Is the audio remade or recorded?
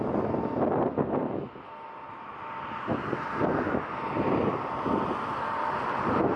recorded